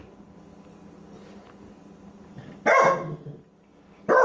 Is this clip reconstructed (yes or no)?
no